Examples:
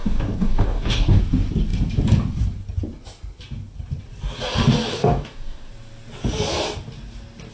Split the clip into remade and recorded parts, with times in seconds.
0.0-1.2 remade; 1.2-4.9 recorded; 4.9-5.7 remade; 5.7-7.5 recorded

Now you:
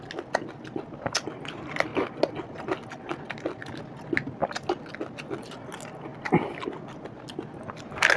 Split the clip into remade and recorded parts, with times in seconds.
0.0-8.2 recorded

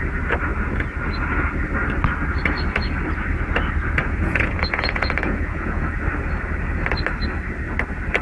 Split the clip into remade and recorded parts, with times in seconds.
0.0-4.0 recorded; 4.0-5.9 remade; 5.9-8.2 recorded